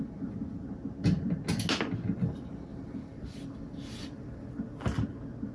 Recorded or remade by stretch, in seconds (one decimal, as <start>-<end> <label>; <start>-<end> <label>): 0.0-2.7 recorded; 2.7-4.2 remade; 4.2-5.5 recorded